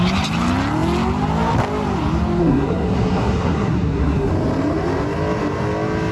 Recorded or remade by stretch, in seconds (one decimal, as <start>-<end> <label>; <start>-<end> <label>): 0.0-2.4 recorded; 2.4-4.3 remade; 4.3-6.1 recorded